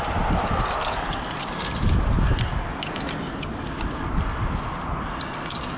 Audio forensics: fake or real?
real